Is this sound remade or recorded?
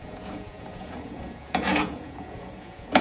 remade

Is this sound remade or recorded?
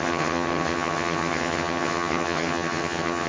remade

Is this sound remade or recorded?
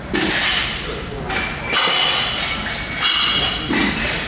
recorded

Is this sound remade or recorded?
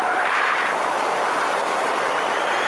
remade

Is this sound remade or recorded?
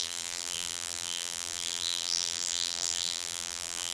remade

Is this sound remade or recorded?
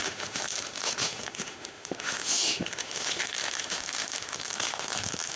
remade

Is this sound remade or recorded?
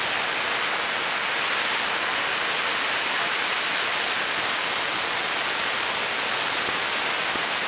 recorded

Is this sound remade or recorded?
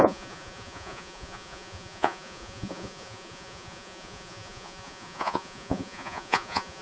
remade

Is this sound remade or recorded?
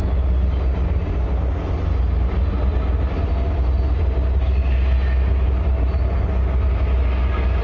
recorded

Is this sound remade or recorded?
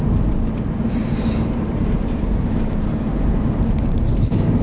remade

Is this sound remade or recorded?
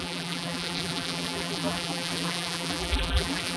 remade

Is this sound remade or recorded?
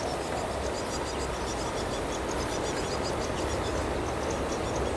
recorded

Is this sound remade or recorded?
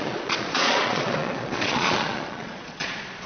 remade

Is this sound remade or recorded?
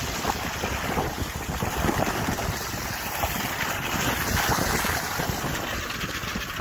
recorded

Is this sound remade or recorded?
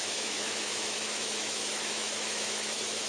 remade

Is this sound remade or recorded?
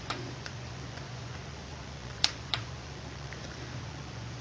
remade